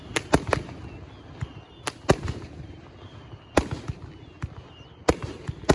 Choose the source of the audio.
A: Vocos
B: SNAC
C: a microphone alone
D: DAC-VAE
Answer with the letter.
C